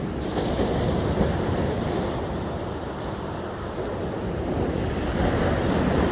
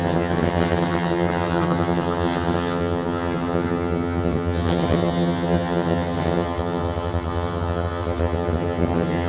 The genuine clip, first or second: first